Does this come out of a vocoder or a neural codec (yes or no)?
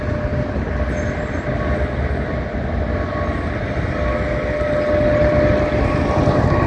no